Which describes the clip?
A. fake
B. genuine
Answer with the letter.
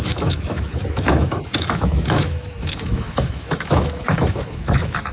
A